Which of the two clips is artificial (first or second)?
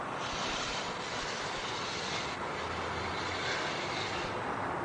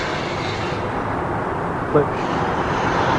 first